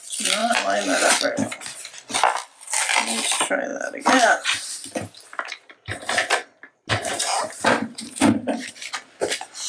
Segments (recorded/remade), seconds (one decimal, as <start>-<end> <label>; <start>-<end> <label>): 0.0-3.7 recorded; 3.7-8.7 remade; 8.7-9.7 recorded